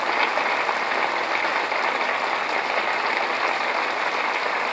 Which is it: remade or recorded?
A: recorded